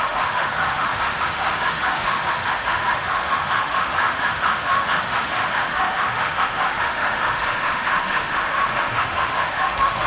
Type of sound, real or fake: fake